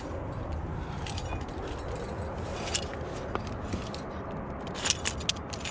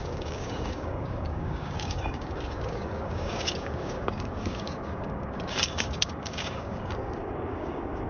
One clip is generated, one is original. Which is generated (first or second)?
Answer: second